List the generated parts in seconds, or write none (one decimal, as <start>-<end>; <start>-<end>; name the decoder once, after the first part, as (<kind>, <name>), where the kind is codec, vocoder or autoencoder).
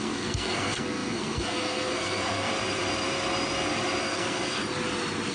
0.0-2.5 (codec, SNAC); 4.0-4.6